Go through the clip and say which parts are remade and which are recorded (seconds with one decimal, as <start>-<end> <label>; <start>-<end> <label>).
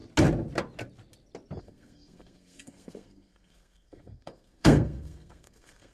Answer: 0.0-1.6 recorded; 1.6-5.9 remade